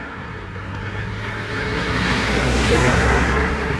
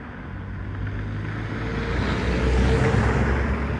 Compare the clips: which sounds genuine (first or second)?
second